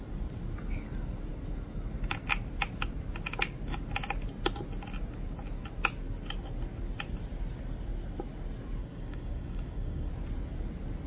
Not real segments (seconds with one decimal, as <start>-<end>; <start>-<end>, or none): 8.8-10.1